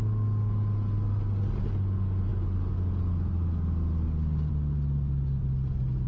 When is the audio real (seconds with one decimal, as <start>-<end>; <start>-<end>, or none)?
0.0-6.1